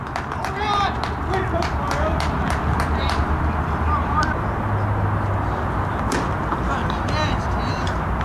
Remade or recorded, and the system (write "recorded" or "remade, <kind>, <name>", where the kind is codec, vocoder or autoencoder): recorded